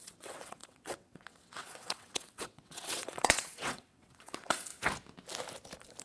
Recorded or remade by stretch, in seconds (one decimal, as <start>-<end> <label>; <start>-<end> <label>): 0.0-4.7 remade; 4.7-6.0 recorded

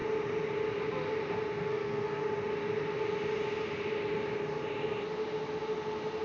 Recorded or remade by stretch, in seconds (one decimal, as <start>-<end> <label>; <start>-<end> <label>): 0.0-1.6 recorded; 1.6-2.2 remade; 2.2-6.2 recorded

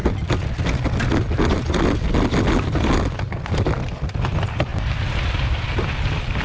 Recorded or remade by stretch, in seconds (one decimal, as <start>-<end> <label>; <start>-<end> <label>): 0.0-3.4 recorded; 3.4-6.4 remade

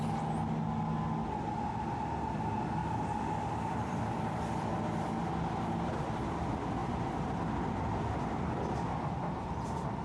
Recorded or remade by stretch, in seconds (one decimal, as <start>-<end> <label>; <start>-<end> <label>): 0.0-2.8 recorded; 2.8-5.3 remade; 5.3-6.8 recorded; 6.8-9.5 remade; 9.5-10.0 recorded

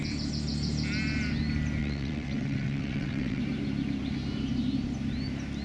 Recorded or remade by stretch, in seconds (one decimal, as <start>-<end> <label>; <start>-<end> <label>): 0.0-1.8 recorded; 1.8-3.4 remade; 3.4-5.6 recorded